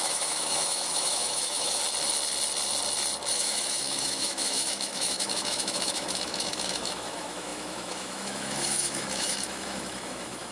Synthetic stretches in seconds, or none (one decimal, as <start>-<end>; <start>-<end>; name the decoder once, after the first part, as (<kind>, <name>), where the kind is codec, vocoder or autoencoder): 0.0-1.8 (autoencoder, DAC-VAE); 3.3-10.5